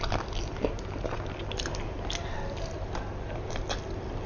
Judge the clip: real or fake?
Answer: real